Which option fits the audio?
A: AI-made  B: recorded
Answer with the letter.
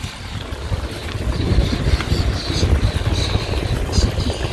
B